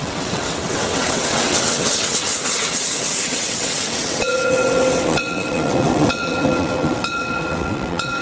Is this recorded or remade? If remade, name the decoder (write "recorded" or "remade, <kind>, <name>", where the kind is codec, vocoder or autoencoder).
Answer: remade, vocoder, WaveNeXt